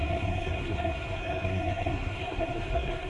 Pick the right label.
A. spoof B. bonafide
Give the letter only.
A